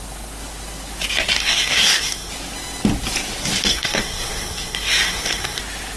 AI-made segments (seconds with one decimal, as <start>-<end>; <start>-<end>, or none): 1.4-2.3; 3.7-5.6